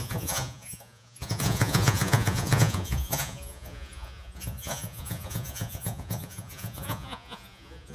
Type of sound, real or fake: fake